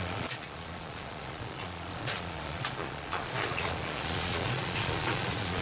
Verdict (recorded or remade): remade